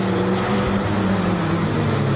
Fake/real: real